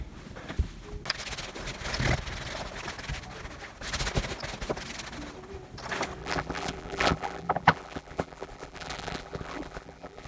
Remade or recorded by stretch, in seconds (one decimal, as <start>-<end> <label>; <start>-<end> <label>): 0.0-6.2 recorded; 6.2-10.3 remade